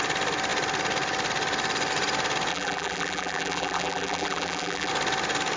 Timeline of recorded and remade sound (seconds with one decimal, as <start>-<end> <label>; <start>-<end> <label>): 0.0-2.5 recorded; 2.5-4.9 remade; 4.9-5.6 recorded